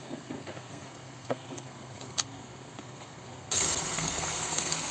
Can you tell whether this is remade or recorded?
remade